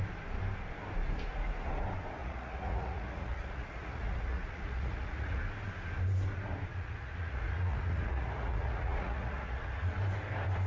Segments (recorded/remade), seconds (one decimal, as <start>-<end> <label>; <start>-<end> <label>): 0.0-2.2 recorded; 2.2-5.4 remade; 5.4-6.7 recorded; 6.7-9.9 remade; 9.9-10.7 recorded